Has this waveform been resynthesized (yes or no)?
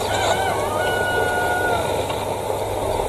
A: no